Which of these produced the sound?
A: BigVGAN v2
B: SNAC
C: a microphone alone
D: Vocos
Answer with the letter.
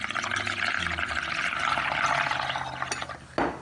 C